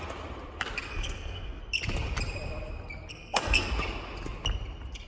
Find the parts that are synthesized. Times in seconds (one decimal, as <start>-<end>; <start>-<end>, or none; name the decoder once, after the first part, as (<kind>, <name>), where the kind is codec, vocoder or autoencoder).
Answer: 0.9-1.6 (codec, SNAC); 3.1-3.7